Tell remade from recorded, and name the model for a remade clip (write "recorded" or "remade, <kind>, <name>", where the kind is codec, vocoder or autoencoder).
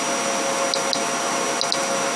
recorded